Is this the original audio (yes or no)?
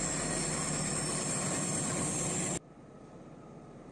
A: yes